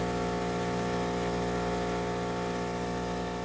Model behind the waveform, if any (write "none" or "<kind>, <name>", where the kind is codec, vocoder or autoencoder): none